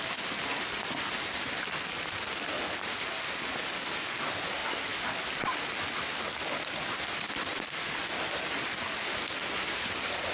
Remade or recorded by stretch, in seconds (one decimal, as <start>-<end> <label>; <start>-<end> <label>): 0.0-10.3 recorded